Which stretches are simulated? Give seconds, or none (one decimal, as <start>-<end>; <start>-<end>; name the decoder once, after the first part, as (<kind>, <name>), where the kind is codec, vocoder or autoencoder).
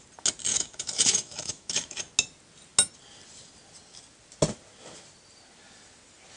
0.5-2.0 (autoencoder, DAC-VAE)